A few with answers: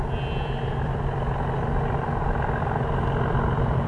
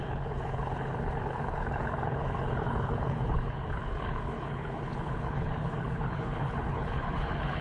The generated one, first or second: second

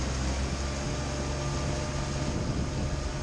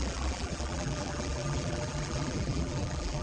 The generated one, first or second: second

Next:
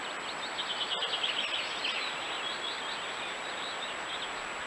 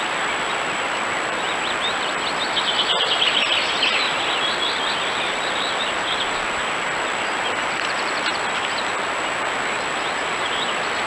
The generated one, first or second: second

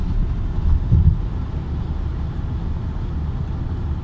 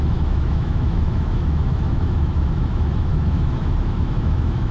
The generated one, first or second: second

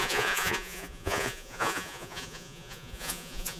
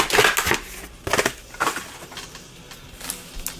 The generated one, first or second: first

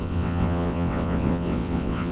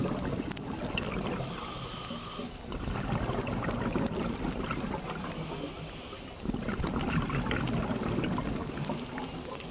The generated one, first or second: first